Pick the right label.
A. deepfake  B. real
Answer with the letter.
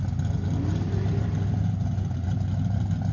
B